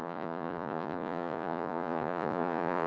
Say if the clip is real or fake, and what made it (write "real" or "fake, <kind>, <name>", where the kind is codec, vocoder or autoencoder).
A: fake, vocoder, Vocos